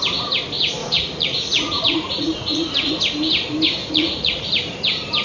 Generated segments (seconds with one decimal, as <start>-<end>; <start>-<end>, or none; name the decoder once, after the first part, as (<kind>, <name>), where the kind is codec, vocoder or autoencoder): 0.8-2.9 (vocoder, Vocos); 3.8-4.5